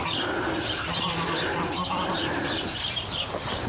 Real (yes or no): yes